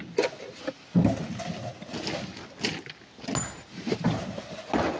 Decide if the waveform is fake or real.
real